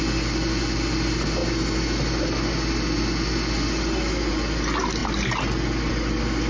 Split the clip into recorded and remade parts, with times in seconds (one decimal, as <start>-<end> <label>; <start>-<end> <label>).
0.0-6.5 recorded